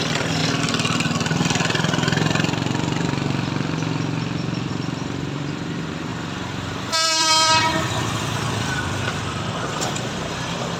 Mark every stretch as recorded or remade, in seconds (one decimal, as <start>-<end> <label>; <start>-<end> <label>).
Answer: 0.0-0.4 remade; 0.4-4.7 recorded; 4.7-10.8 remade